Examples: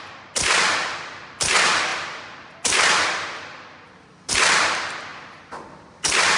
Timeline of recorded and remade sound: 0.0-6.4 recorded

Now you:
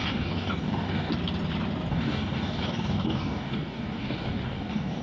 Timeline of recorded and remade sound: 0.0-1.1 remade; 1.1-1.9 recorded; 1.9-5.0 remade

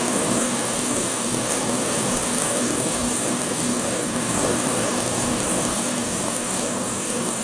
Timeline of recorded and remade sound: 0.0-7.4 remade